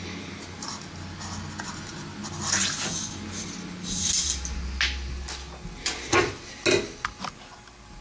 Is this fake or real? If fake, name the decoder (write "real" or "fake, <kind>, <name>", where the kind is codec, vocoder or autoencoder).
real